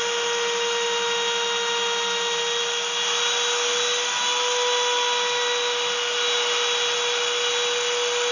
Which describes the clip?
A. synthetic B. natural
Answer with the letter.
B